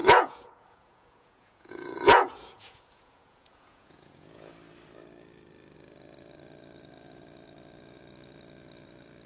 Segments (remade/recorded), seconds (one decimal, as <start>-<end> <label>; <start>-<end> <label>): 0.0-4.5 remade; 4.5-9.3 recorded